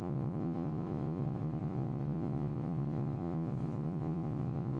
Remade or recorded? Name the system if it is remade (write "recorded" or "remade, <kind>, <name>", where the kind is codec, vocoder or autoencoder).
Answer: remade, vocoder, Vocos